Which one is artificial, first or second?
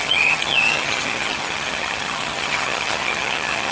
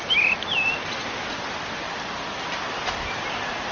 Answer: first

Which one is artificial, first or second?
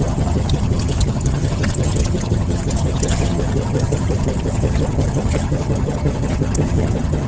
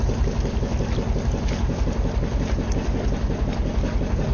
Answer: first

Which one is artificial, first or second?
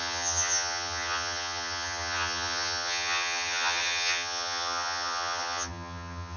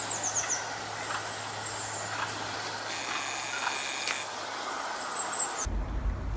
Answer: first